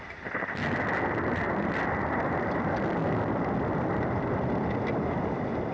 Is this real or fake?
real